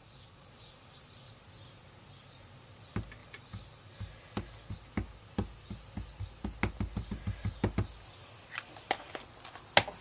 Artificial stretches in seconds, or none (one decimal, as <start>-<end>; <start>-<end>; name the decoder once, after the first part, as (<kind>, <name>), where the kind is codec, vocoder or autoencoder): 0.0-1.3 (vocoder, BigVGAN v2); 3.2-4.1